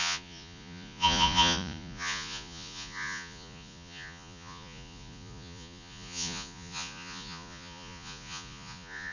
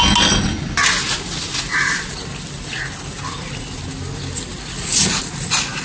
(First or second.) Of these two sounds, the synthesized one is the first